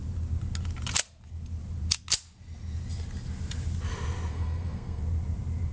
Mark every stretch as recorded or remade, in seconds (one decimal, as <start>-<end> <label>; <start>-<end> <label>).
0.0-4.3 recorded; 4.3-5.0 remade; 5.0-5.7 recorded